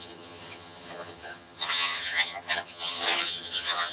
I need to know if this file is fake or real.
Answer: fake